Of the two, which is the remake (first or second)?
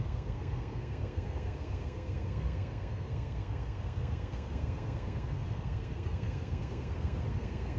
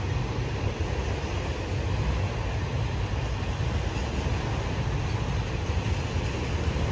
first